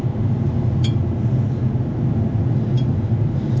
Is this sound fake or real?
real